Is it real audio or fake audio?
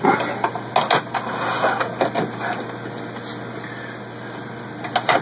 real